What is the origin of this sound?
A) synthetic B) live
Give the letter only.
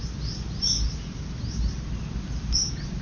B